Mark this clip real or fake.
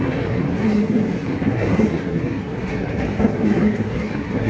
fake